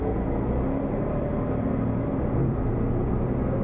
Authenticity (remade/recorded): recorded